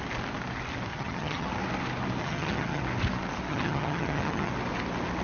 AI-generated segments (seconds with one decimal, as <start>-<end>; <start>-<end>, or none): 0.9-1.5; 2.2-2.8; 3.5-4.5